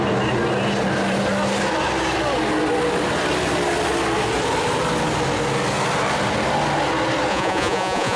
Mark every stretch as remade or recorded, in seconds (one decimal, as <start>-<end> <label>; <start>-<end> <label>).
0.0-7.3 recorded; 7.3-8.2 remade